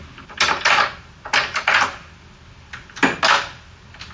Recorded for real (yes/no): yes